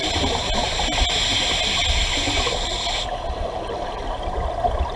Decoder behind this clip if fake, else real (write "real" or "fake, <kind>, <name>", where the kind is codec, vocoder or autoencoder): real